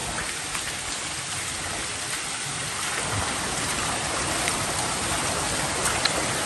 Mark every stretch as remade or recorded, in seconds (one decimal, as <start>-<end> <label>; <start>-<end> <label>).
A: 0.0-6.5 recorded